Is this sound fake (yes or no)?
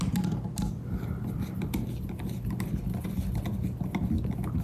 no